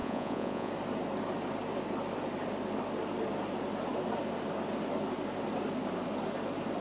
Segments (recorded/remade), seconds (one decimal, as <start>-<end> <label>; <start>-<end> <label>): 0.0-0.7 remade; 0.7-6.8 recorded